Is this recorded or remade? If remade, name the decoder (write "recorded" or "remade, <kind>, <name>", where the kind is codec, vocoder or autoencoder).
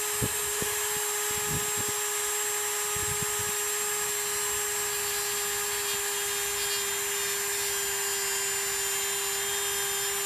recorded